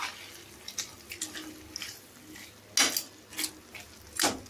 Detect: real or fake real